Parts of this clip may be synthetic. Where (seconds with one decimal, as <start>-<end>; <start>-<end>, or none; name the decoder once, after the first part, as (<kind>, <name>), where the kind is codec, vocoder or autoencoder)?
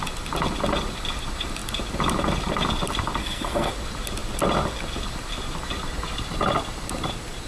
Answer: 3.2-3.7 (codec, SNAC)